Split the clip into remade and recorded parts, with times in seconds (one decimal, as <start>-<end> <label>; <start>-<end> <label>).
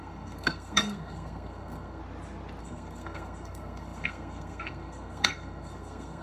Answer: 0.0-2.0 remade; 2.0-2.6 recorded; 2.6-6.2 remade